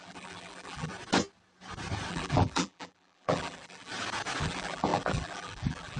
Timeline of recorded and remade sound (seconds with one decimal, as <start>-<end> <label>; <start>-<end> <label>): 0.0-0.9 remade; 0.9-2.1 recorded; 2.1-3.9 remade; 3.9-4.4 recorded; 4.4-6.0 remade